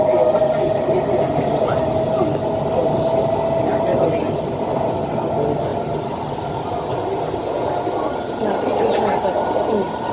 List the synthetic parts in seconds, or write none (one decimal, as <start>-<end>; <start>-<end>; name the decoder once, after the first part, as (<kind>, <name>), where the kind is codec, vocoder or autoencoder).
none